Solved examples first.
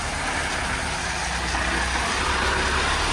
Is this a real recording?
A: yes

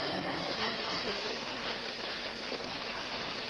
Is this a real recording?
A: no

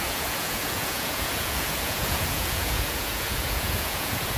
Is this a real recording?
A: no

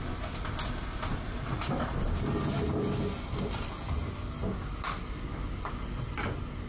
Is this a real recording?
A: yes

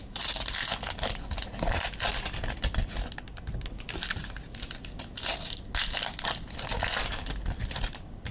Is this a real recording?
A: yes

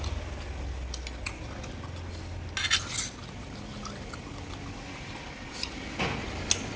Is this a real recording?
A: yes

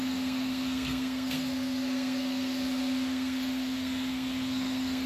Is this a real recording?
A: no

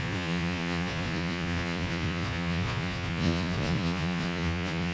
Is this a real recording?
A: no